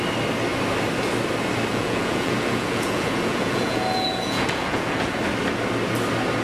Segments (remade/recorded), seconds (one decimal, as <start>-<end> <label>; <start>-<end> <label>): 0.0-1.7 recorded; 1.7-5.2 remade; 5.2-6.4 recorded